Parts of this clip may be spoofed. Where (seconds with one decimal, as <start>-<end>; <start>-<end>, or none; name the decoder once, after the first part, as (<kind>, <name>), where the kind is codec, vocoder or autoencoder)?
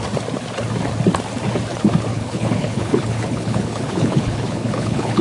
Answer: 2.1-5.2 (codec, HILCodec)